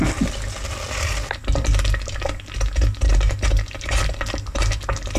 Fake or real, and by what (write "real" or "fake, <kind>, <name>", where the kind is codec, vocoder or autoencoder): real